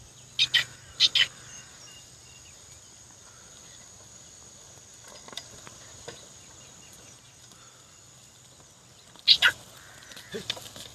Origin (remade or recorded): recorded